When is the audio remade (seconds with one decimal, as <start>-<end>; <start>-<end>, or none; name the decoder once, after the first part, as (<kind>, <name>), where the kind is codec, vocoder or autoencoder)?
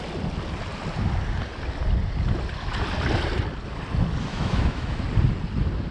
4.3-5.0 (autoencoder, DAC-VAE)